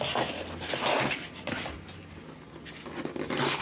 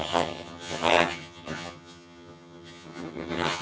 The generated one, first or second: second